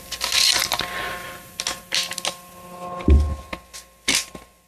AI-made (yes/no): no